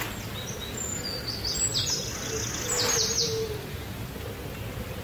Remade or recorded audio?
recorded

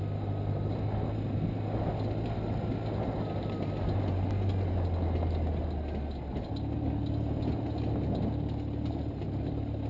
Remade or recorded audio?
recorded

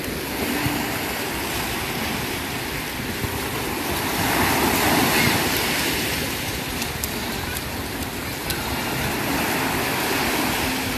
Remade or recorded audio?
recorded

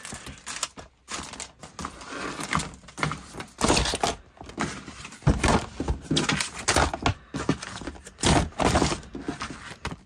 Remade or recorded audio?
recorded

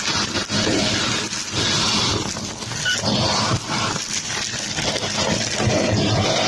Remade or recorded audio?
recorded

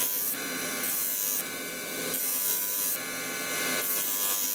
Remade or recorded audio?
recorded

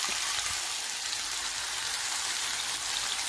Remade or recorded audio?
recorded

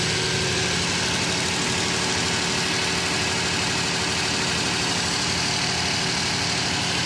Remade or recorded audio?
recorded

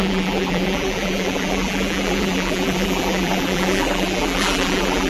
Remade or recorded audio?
remade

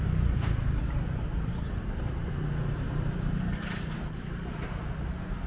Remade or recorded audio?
remade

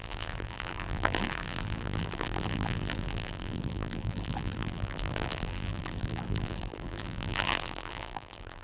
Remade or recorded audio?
remade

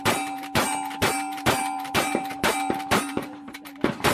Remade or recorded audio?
remade